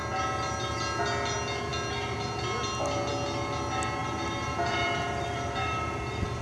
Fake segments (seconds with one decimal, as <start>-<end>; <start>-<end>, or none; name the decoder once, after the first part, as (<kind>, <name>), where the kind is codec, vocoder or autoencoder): 4.0-6.4 (vocoder, BigVGAN v2)

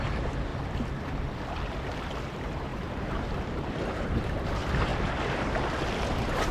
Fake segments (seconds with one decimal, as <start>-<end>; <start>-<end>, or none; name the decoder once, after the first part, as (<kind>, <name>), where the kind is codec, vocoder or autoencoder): 0.0-0.5 (vocoder, BigVGAN v2); 2.2-4.9

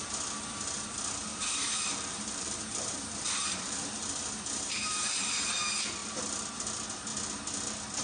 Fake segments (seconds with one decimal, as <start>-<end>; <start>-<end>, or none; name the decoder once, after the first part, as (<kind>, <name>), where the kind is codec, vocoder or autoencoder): 1.3-5.3 (vocoder, BigVGAN v2)

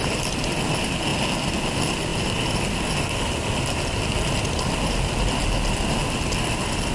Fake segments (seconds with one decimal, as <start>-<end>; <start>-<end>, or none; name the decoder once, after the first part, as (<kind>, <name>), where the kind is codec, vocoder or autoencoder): none

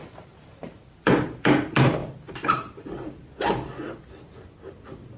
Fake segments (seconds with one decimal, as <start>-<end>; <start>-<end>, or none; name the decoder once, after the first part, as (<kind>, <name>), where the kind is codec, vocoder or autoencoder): 0.0-2.0 (vocoder, BigVGAN v2)

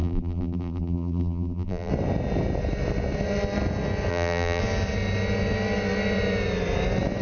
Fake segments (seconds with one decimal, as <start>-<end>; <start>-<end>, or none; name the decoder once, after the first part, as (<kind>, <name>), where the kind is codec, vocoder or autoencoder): 0.0-1.9 (vocoder, BigVGAN v2); 4.1-4.6

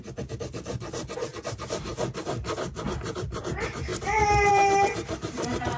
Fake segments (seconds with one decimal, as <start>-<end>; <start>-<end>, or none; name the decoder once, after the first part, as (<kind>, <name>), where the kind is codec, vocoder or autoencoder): 0.0-1.9 (vocoder, BigVGAN v2); 3.3-3.9; 4.5-5.8

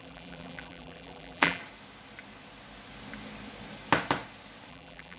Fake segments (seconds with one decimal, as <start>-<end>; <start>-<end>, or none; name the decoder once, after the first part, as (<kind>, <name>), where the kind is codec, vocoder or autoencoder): 0.0-1.6 (vocoder, BigVGAN v2); 4.7-5.2